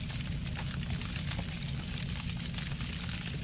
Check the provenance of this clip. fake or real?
real